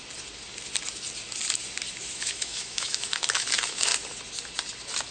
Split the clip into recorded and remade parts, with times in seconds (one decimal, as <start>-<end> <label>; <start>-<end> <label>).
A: 0.0-2.1 recorded; 2.1-3.9 remade; 3.9-5.1 recorded